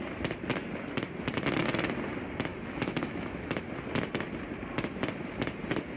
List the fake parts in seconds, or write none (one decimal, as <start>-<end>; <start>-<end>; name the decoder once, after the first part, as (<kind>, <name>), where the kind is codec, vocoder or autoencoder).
2.5-3.6 (autoencoder, DAC-VAE)